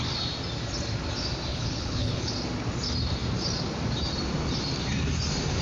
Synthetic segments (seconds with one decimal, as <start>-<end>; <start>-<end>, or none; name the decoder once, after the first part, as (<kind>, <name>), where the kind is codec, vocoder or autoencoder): 1.5-2.3 (codec, HILCodec)